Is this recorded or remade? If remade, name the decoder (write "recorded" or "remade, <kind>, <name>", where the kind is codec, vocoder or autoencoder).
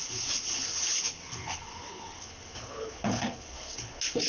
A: remade, codec, HILCodec